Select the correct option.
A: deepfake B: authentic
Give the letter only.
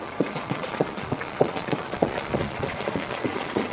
A